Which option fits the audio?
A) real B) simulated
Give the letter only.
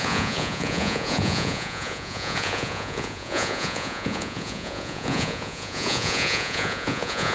B